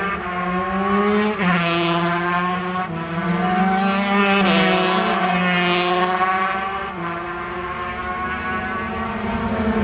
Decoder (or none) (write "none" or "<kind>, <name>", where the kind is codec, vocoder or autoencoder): none